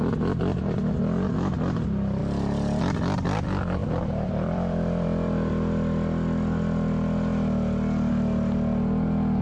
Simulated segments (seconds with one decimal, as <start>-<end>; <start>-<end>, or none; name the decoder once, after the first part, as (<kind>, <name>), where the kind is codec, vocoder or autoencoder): 3.8-5.5 (vocoder, BigVGAN v2)